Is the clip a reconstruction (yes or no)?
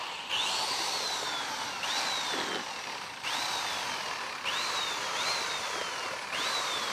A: no